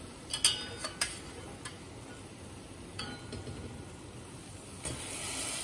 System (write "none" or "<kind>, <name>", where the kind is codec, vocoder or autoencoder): none